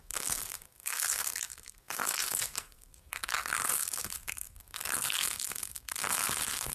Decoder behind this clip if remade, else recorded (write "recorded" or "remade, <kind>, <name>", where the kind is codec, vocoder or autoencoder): remade, codec, SNAC